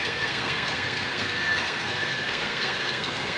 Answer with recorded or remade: remade